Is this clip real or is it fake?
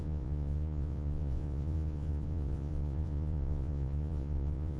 fake